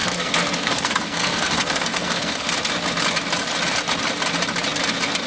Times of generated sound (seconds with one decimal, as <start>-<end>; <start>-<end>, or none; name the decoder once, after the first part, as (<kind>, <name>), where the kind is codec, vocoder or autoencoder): 0.0-2.5 (codec, SNAC)

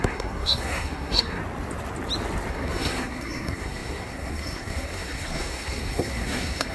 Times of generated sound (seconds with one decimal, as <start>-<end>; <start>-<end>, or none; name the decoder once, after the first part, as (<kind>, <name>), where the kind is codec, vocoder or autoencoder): 0.0-1.4 (codec, SNAC); 2.5-6.7

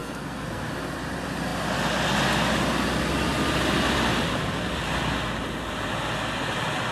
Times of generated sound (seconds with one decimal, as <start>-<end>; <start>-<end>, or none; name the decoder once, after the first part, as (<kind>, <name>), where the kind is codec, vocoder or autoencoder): 0.0-0.7 (codec, SNAC)

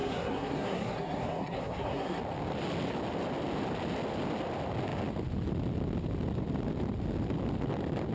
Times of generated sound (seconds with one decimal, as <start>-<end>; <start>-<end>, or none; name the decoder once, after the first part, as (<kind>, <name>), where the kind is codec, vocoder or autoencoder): 0.0-2.2 (codec, SNAC)

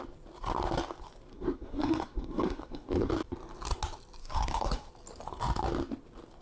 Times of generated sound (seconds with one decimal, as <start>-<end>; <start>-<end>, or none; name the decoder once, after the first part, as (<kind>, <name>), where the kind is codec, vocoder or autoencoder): 1.3-3.1 (codec, SNAC); 4.2-4.9

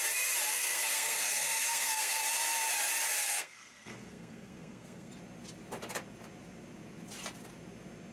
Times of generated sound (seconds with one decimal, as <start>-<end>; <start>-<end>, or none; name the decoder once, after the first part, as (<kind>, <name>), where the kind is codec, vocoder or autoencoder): 0.5-2.2 (codec, SNAC); 3.1-5.1

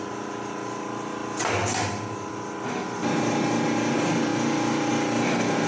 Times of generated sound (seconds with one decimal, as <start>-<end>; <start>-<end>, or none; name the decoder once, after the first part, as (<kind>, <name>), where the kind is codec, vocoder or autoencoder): none

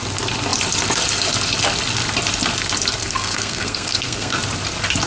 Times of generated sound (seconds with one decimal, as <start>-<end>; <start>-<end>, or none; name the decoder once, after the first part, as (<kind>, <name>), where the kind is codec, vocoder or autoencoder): 3.0-4.4 (codec, SNAC)